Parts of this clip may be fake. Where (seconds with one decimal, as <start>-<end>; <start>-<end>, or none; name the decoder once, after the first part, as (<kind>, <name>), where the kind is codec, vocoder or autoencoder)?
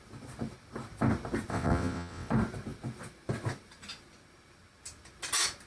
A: 1.5-2.3 (vocoder, WaveNeXt)